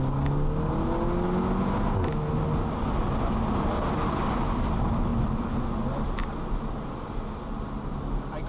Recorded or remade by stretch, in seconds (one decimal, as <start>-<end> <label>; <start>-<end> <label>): 0.0-8.5 recorded